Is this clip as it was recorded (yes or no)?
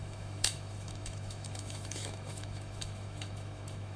no